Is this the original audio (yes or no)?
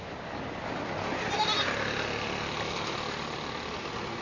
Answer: yes